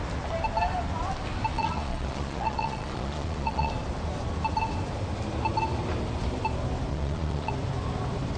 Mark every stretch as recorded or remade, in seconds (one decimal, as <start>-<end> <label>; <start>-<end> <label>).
0.0-1.5 recorded; 1.5-3.7 remade; 3.7-6.9 recorded; 6.9-7.5 remade; 7.5-8.4 recorded